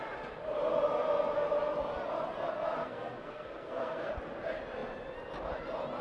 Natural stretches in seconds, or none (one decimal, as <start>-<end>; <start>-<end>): 0.0-2.8; 4.1-6.0